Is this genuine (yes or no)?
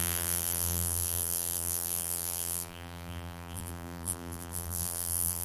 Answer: no